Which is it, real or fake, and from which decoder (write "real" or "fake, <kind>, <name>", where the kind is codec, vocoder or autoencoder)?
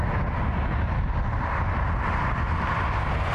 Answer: real